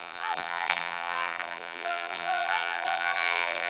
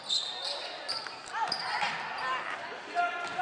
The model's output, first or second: first